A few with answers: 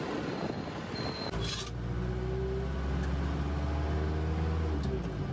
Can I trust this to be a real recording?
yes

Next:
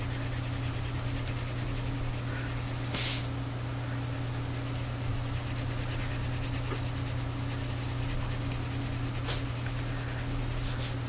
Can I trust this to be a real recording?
yes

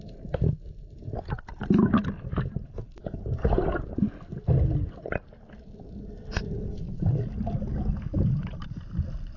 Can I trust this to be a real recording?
yes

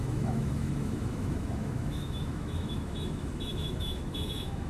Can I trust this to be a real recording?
no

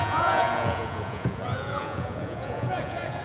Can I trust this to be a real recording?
no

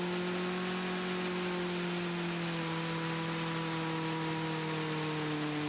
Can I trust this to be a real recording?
yes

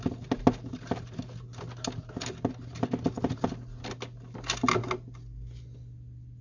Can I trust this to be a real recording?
yes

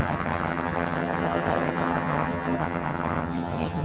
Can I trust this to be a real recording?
no